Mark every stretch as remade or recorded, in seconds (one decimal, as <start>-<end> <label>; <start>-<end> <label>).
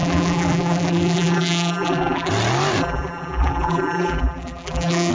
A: 0.0-2.3 remade; 2.3-2.8 recorded; 2.8-5.1 remade